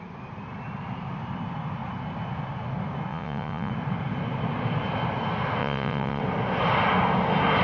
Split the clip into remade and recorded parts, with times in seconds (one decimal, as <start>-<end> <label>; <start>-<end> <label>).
0.0-3.1 recorded; 3.1-3.7 remade; 3.7-5.6 recorded; 5.6-6.2 remade; 6.2-7.6 recorded